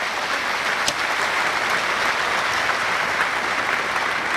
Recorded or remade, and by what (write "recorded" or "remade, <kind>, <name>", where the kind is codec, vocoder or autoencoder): recorded